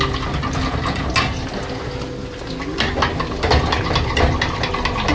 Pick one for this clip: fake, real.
real